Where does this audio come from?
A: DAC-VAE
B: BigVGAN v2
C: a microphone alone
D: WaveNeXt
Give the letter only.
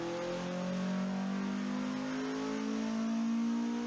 C